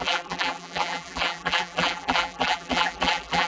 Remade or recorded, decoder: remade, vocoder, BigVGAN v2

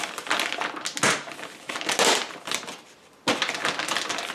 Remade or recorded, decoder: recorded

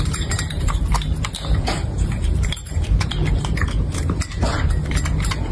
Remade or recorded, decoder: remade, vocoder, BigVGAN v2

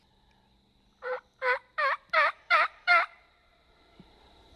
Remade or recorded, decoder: remade, vocoder, BigVGAN v2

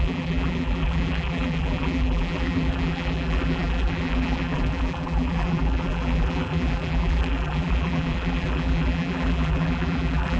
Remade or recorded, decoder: remade, vocoder, BigVGAN v2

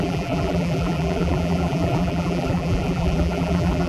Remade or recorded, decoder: remade, vocoder, BigVGAN v2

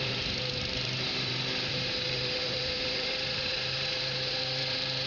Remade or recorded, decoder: remade, vocoder, BigVGAN v2